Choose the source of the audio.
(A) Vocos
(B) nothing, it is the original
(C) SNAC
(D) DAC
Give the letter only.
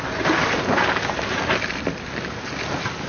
B